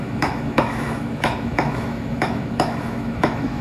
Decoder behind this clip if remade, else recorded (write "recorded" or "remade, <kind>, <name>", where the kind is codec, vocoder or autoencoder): remade, autoencoder, DAC-VAE